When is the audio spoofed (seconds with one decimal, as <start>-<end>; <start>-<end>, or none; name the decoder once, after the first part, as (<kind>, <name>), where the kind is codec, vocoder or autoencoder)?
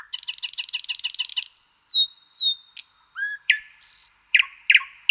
1.3-4.4 (vocoder, BigVGAN v2)